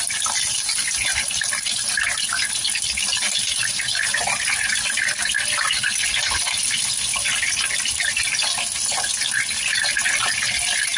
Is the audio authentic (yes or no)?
yes